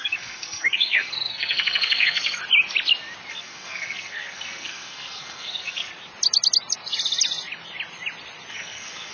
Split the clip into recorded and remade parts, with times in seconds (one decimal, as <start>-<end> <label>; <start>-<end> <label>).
0.0-2.4 remade; 2.4-3.3 recorded; 3.3-5.9 remade; 5.9-8.5 recorded; 8.5-9.1 remade